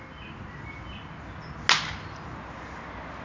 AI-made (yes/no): no